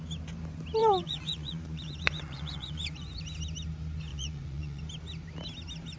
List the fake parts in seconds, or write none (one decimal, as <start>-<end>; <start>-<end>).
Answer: 0.8-3.2; 4.1-4.8